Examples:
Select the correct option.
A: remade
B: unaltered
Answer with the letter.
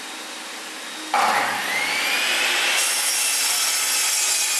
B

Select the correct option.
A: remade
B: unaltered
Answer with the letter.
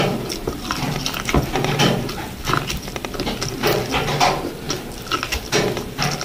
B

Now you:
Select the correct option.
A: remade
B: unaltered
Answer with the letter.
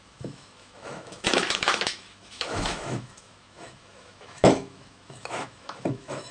A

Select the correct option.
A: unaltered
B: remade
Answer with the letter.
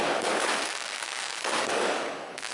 B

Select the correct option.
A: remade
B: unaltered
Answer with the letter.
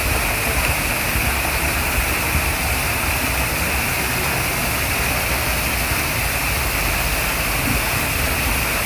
B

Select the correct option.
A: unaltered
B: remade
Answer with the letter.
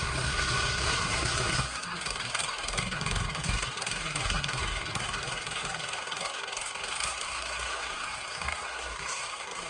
B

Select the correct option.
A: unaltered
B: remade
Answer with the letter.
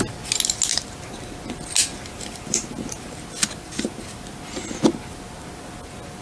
A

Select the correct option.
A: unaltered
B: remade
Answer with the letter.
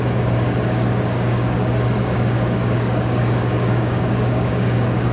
B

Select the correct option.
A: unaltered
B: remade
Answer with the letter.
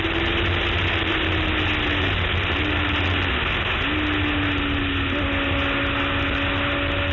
A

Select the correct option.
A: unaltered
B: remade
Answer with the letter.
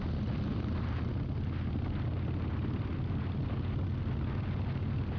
A